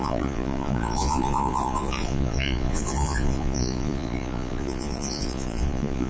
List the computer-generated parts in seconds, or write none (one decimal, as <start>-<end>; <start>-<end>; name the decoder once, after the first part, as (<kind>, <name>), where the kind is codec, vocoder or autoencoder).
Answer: 0.0-6.1 (vocoder, Vocos)